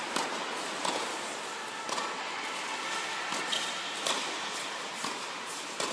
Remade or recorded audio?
recorded